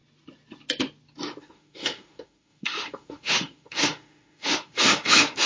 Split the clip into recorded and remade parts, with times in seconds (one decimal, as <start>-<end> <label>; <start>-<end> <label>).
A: 0.0-1.4 recorded; 1.4-5.5 remade